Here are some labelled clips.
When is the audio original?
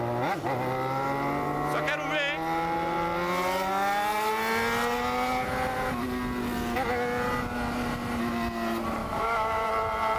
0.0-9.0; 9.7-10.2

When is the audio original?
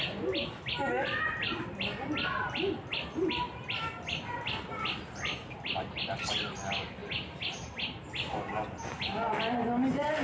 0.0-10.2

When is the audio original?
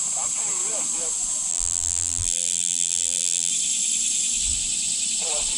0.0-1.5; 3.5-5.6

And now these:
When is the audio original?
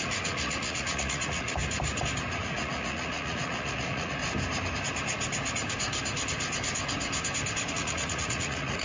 1.6-2.4; 4.2-7.7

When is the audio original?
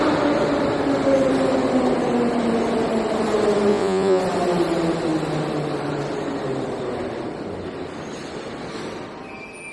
0.0-3.7; 4.2-9.7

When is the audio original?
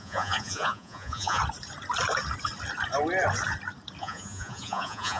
1.4-4.0